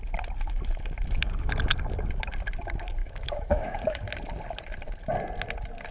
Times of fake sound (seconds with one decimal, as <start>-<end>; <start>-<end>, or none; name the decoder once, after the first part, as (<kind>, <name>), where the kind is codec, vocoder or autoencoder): 3.0-4.1 (autoencoder, DAC-VAE)